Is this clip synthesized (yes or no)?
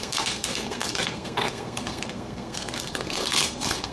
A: yes